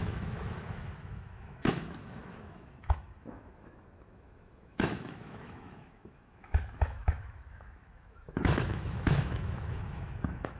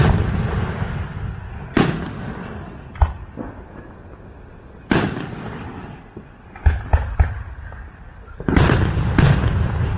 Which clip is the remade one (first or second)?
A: first